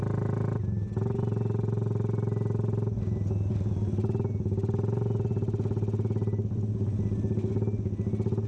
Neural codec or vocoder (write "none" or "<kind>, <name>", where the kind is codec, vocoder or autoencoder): none